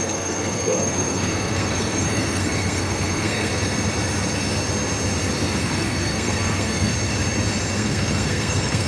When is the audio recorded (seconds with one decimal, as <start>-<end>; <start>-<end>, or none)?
3.5-5.6; 6.9-7.7